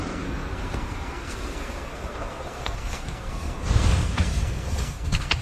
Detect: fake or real fake